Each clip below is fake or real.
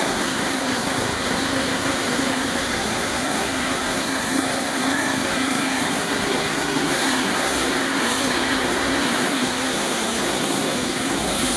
fake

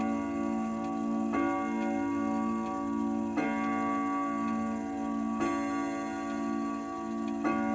real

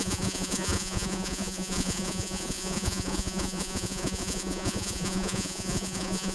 fake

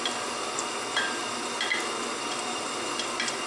real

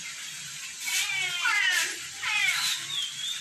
fake